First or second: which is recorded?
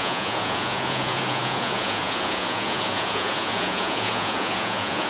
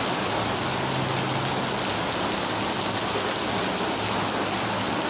second